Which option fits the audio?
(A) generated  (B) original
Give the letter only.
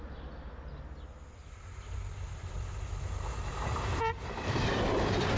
B